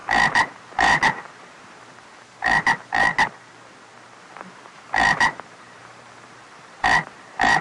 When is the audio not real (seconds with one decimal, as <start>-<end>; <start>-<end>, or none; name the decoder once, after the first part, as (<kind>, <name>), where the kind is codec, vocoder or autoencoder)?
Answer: 0.0-3.1 (vocoder, BigVGAN v2); 4.2-7.6